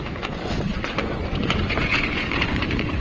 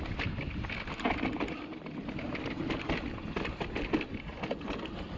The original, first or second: second